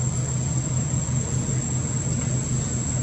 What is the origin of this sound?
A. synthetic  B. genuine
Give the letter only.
B